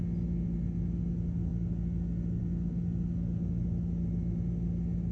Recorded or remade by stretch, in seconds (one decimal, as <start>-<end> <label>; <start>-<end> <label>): 0.0-5.1 recorded